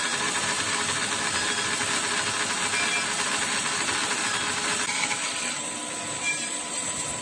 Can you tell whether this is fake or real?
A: real